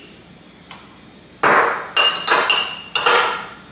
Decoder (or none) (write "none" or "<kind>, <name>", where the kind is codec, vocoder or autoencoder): none